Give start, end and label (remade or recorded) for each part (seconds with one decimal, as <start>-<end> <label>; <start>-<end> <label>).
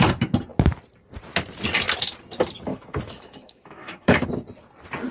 0.0-2.7 recorded; 2.7-4.3 remade; 4.3-5.1 recorded